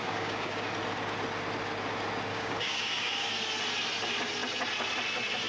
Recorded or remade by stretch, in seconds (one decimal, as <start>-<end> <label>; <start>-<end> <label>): 0.0-0.7 remade; 0.7-2.3 recorded; 2.3-3.3 remade; 3.3-5.5 recorded